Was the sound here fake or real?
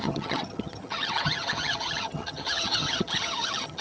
fake